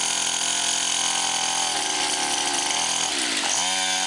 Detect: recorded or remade recorded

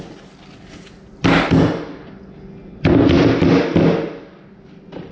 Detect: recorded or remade recorded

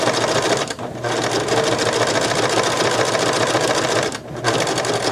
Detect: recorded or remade recorded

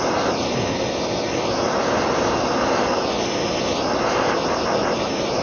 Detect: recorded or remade recorded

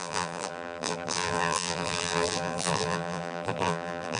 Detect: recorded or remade remade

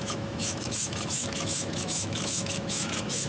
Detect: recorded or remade remade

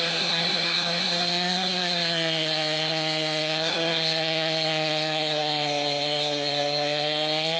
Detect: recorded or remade remade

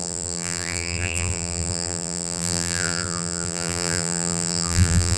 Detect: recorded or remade remade